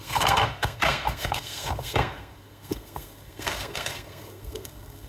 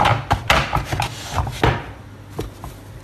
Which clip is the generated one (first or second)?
first